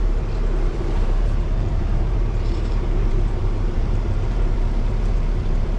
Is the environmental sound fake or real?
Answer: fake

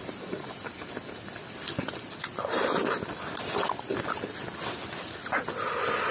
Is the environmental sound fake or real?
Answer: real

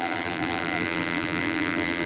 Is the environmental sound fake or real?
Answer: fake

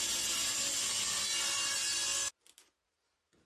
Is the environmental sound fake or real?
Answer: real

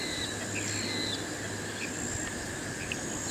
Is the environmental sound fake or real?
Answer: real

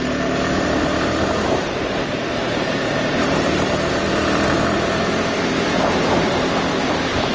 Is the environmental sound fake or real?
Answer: fake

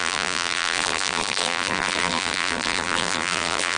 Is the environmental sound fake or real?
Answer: fake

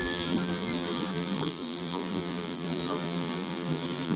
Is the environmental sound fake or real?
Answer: fake